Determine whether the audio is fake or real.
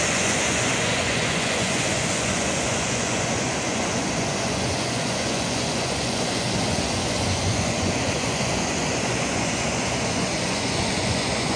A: fake